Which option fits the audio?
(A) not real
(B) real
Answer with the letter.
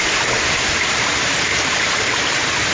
B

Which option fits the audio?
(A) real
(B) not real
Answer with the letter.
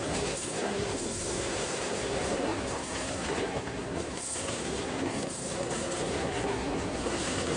B